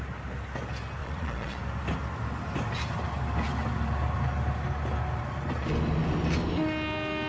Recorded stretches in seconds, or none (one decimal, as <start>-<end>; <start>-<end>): 0.0-1.0; 1.6-7.3